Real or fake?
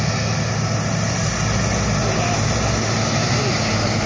real